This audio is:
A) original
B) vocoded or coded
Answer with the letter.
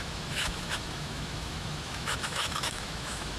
B